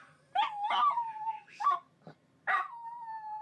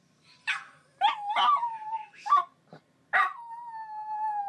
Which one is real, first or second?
second